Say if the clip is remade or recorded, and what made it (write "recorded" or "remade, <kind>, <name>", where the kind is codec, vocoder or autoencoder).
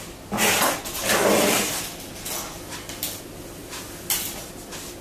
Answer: recorded